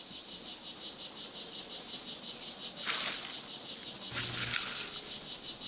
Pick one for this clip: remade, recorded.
recorded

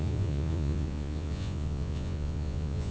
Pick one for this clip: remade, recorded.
remade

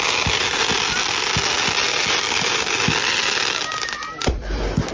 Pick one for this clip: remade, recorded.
recorded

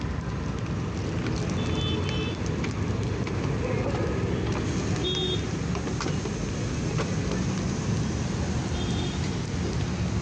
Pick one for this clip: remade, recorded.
recorded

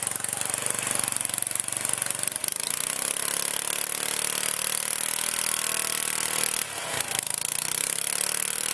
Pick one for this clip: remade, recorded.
recorded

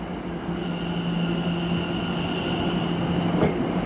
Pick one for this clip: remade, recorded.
recorded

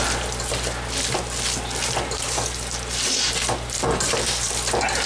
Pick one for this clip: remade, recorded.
recorded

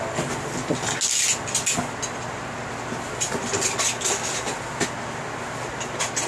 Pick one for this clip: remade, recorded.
recorded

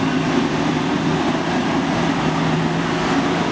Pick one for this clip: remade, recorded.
remade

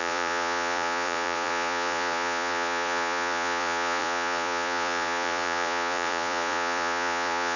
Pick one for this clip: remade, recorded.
remade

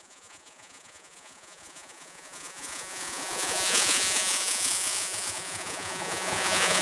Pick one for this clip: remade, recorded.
remade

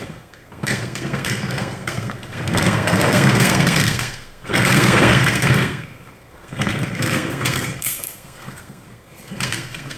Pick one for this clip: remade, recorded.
remade